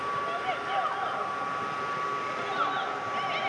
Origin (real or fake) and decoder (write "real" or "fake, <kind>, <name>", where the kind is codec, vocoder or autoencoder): real